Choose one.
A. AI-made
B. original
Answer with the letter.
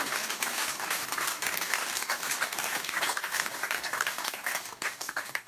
A